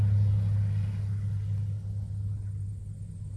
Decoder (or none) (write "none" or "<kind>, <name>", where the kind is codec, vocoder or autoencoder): none